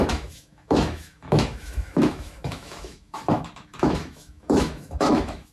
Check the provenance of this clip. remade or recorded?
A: remade